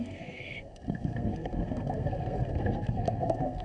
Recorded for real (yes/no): no